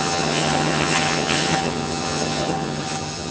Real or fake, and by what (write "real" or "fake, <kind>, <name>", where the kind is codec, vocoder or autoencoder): fake, vocoder, HiFi-GAN